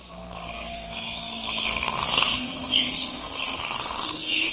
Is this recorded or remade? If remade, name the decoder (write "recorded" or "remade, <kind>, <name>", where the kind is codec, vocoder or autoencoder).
remade, codec, SNAC